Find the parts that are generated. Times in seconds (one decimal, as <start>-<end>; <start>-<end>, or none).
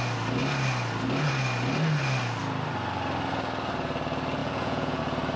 4.4-5.0